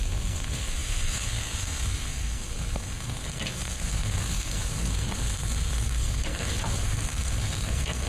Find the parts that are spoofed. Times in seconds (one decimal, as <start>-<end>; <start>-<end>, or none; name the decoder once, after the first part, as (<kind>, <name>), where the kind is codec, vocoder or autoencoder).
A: 0.0-8.1 (codec, SNAC)